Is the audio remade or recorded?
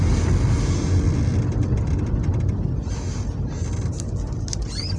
recorded